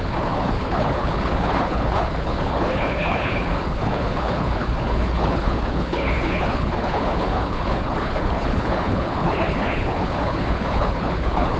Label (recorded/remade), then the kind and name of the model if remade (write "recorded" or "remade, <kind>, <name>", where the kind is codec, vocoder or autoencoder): remade, codec, HILCodec